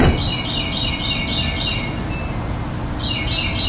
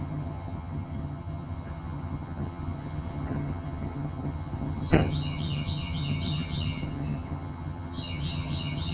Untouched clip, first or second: first